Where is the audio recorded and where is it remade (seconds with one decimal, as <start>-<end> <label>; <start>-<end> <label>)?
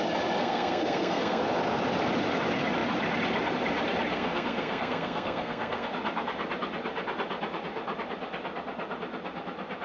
0.0-0.4 recorded; 0.4-1.4 remade; 1.4-4.1 recorded; 4.1-5.9 remade; 5.9-9.8 recorded